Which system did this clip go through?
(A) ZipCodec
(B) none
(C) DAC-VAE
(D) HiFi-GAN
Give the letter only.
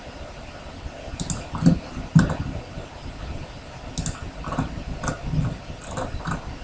B